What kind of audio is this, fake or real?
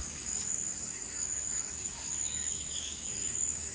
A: fake